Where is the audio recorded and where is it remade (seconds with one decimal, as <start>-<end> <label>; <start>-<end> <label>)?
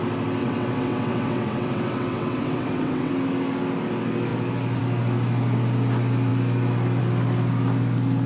0.0-0.4 recorded; 0.4-3.1 remade; 3.1-8.3 recorded